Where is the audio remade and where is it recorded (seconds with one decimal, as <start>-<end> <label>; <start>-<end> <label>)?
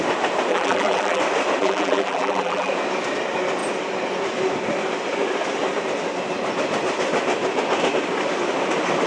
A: 0.0-0.5 recorded; 0.5-1.2 remade; 1.2-1.6 recorded; 1.6-2.7 remade; 2.7-9.1 recorded